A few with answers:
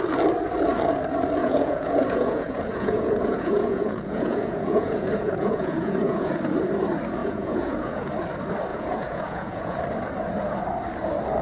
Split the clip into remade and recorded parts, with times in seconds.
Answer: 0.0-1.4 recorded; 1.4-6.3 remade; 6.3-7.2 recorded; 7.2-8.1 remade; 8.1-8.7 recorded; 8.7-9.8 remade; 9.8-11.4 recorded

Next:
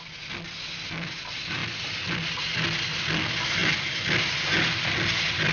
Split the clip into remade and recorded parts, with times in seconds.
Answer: 0.0-5.5 recorded